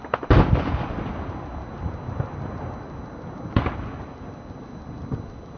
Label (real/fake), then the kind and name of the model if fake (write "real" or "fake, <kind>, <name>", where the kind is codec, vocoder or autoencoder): real